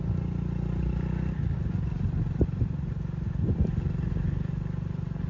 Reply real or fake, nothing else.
real